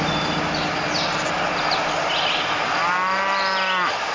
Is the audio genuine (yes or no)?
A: yes